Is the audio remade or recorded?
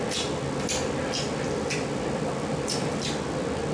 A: recorded